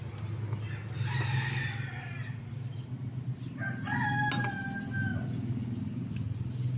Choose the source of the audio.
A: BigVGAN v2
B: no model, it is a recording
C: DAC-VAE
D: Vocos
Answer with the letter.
B